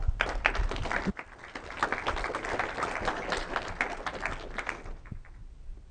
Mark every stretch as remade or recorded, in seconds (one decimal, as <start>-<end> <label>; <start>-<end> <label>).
0.0-5.9 recorded